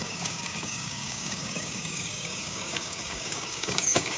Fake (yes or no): yes